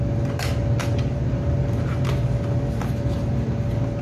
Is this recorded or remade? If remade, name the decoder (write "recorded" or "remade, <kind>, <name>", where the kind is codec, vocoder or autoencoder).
recorded